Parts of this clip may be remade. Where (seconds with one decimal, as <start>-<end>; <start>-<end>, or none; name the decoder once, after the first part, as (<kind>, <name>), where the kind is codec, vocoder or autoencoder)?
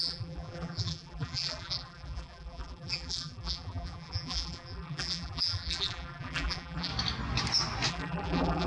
0.0-6.9 (vocoder, BigVGAN v2); 7.9-8.7